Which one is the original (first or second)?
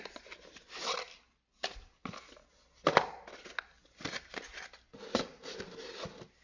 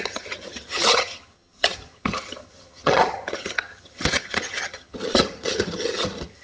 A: first